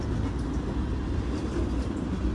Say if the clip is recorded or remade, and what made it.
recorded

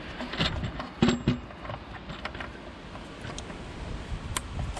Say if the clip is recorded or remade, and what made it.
recorded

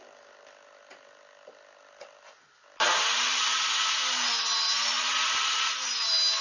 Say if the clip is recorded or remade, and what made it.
recorded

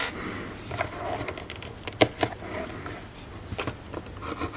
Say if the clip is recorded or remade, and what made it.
recorded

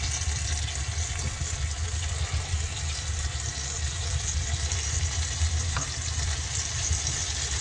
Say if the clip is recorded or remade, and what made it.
recorded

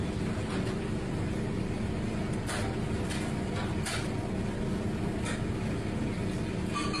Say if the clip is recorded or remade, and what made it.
recorded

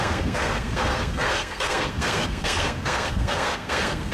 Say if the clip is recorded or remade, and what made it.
remade, codec, SNAC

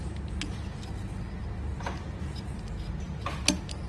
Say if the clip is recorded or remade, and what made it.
recorded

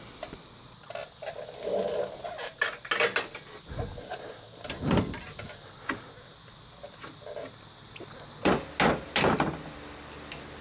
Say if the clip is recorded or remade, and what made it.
recorded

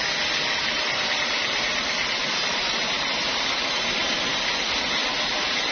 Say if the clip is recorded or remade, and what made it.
recorded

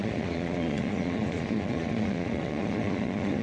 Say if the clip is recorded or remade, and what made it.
remade, vocoder, Vocos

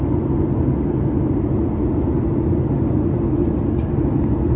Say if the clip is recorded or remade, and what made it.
recorded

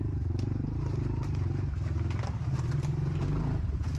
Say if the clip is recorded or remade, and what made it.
recorded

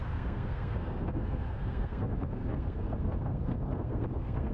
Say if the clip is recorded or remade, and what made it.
remade, codec, SNAC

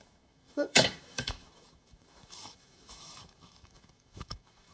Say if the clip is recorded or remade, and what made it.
remade, autoencoder, DAC-VAE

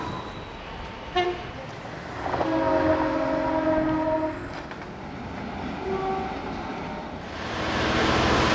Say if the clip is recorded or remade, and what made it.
recorded